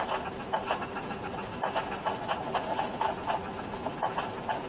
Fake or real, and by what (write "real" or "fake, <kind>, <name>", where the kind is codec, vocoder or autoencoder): real